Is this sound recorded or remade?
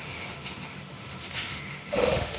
remade